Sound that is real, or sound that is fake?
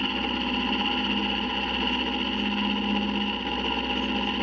real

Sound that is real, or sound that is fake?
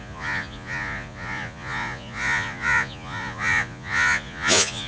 fake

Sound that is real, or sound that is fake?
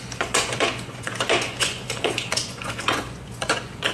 fake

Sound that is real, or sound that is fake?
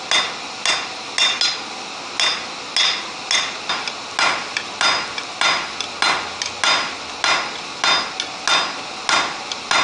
real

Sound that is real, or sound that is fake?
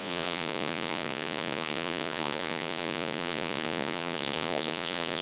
fake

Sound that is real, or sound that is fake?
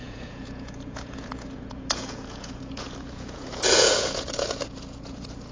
fake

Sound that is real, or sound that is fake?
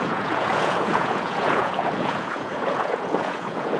fake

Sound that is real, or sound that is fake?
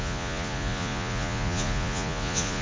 fake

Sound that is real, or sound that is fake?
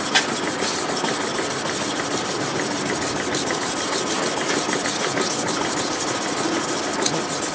real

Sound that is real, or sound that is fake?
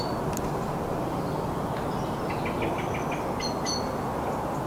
real